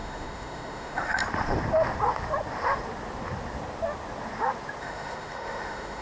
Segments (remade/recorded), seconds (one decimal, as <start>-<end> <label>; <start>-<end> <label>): 0.0-1.2 remade; 1.2-4.8 recorded; 4.8-6.0 remade